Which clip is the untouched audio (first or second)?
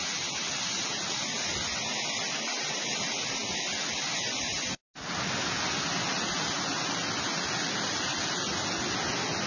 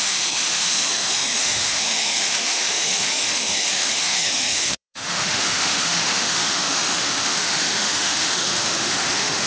first